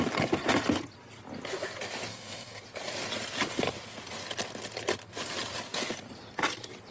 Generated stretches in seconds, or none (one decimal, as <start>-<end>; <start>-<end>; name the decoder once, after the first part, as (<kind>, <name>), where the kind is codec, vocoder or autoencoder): 2.1-2.6 (codec, SNAC)